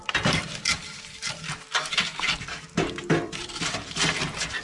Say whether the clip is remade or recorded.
remade